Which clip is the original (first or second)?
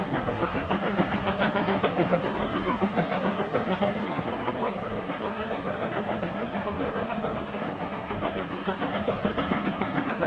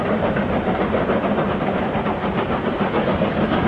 second